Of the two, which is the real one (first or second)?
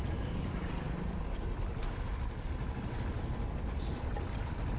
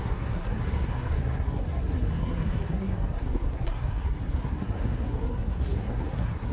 first